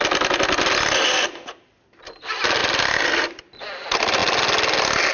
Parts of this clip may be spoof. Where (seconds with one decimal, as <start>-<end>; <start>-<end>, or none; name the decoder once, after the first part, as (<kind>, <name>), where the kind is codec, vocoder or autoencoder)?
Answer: 2.6-3.4 (vocoder, BigVGAN v2)